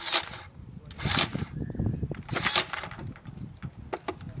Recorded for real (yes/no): yes